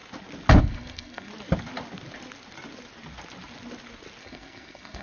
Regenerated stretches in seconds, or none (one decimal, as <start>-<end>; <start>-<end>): 0.6-1.3; 4.2-5.0